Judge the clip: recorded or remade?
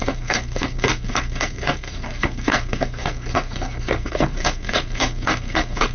remade